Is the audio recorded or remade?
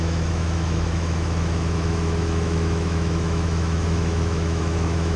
remade